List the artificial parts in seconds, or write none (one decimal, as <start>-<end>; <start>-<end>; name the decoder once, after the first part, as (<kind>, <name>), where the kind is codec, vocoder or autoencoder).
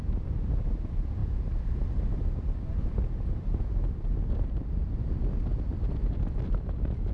none